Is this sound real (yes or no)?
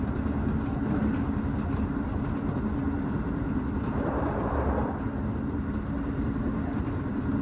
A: yes